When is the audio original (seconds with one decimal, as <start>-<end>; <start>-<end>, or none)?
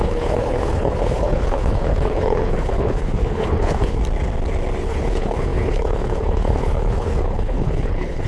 4.0-4.8